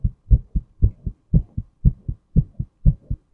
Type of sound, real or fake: real